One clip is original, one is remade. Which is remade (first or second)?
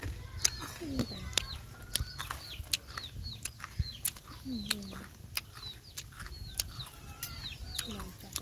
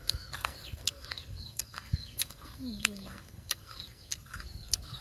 second